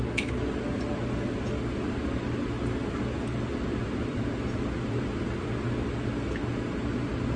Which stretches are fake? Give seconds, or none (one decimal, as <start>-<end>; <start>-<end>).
3.8-6.4